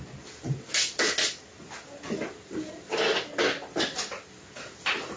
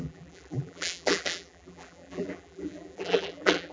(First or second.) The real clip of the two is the first